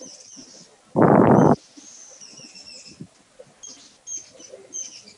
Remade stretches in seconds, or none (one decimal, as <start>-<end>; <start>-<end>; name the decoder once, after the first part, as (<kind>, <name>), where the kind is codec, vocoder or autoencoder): none